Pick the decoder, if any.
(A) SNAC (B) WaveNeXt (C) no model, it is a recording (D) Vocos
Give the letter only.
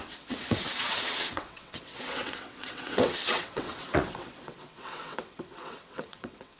B